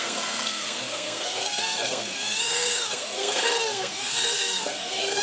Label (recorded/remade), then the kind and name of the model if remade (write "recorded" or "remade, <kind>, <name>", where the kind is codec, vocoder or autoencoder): remade, codec, SNAC